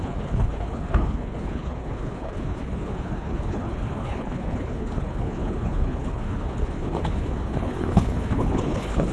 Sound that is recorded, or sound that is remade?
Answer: remade